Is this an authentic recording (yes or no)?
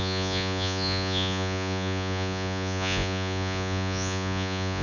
no